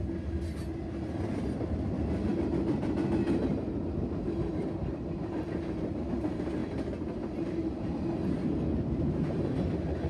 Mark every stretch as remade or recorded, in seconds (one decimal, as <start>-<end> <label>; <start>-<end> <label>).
0.0-10.1 recorded